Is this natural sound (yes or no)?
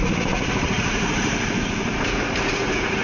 no